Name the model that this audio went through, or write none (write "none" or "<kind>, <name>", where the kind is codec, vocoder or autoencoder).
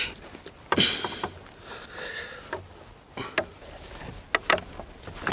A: none